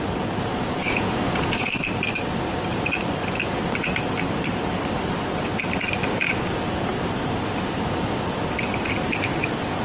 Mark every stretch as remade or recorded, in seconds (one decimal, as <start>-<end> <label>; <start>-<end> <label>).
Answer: 0.0-0.8 recorded; 0.8-1.7 remade; 1.7-9.8 recorded